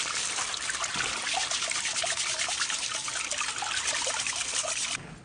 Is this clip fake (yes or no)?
no